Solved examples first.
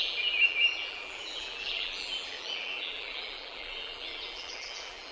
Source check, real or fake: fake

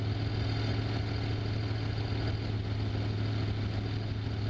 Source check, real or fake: real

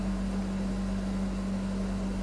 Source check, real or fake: real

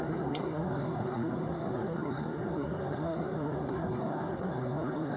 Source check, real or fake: fake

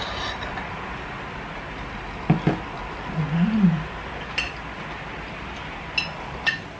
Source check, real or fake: real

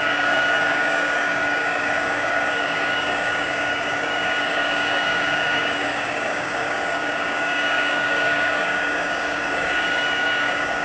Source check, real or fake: fake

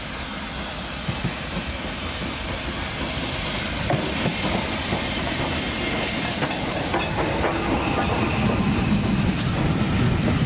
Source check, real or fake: real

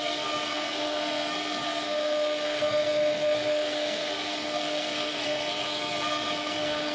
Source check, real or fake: fake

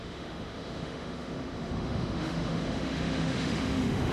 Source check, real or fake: fake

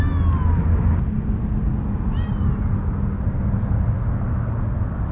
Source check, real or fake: real